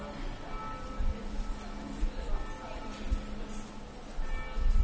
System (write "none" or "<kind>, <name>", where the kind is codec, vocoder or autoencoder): none